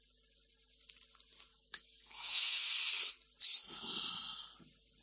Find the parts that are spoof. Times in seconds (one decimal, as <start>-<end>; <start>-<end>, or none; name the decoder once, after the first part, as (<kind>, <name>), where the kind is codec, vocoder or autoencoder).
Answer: 1.5-2.7 (autoencoder, DAC-VAE)